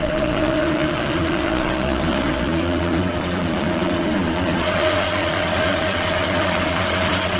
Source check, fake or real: fake